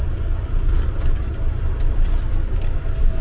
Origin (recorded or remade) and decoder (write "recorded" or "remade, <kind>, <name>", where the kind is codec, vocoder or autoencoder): recorded